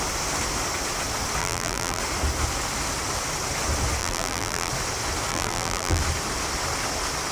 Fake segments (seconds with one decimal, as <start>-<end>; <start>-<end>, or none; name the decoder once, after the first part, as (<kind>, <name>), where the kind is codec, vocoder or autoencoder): 1.4-2.0 (vocoder, BigVGAN v2); 4.0-4.7; 5.3-6.0